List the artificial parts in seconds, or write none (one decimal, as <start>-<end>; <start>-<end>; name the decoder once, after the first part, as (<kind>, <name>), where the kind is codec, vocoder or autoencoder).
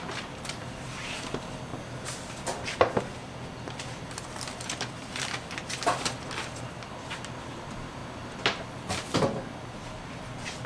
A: 0.0-1.7 (vocoder, BigVGAN v2); 6.7-8.0; 10.2-10.7